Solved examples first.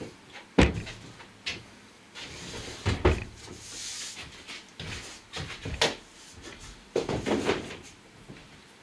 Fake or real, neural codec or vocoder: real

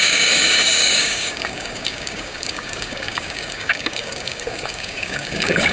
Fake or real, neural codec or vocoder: fake, codec, DAC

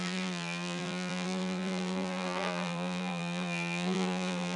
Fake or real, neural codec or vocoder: fake, vocoder, BigVGAN v2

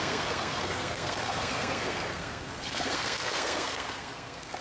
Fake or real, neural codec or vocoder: fake, codec, SNAC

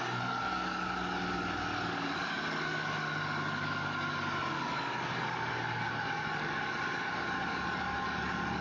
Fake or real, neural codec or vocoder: fake, codec, DAC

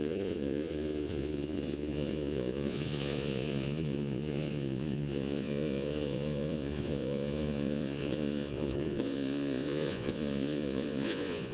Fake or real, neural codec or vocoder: fake, vocoder, Vocos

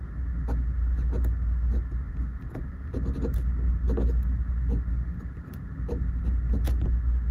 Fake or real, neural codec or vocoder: real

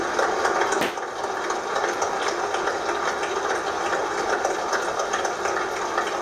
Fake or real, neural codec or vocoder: real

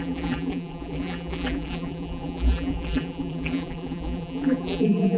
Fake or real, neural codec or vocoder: fake, vocoder, BigVGAN v2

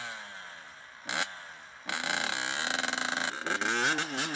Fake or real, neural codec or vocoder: real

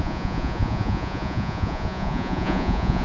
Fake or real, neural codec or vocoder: fake, vocoder, Vocos